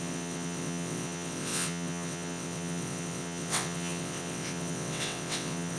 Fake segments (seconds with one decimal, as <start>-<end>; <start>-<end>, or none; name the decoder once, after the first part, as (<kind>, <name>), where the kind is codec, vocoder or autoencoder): 0.0-5.8 (vocoder, WaveNeXt)